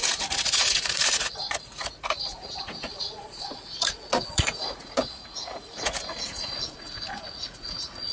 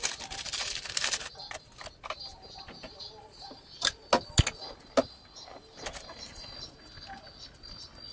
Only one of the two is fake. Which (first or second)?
first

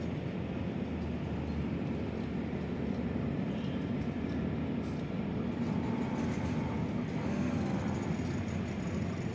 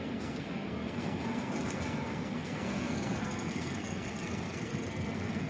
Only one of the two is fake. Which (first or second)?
second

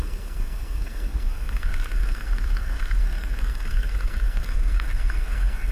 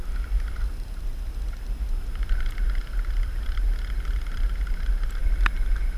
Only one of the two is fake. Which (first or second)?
first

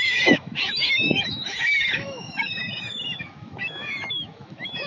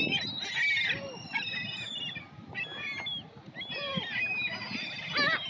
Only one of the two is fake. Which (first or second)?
first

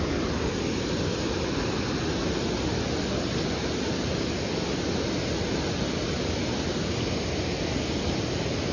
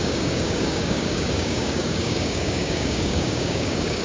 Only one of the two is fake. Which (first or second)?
second